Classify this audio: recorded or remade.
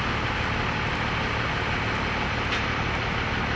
recorded